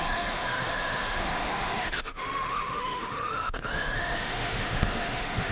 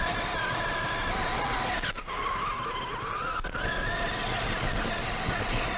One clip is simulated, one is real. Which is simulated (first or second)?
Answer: first